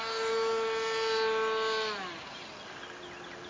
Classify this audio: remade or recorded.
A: recorded